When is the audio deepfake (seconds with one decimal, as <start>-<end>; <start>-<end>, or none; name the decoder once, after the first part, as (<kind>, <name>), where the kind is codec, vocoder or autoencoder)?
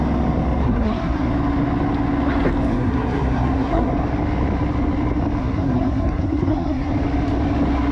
0.6-1.3 (codec, SNAC); 2.7-3.9; 5.4-6.9